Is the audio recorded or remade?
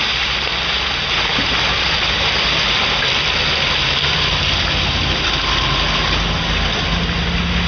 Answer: recorded